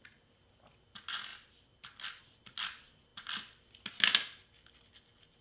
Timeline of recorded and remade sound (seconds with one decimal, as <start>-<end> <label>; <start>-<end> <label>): 0.0-5.4 recorded